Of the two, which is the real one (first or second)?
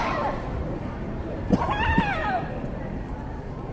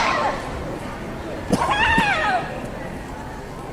second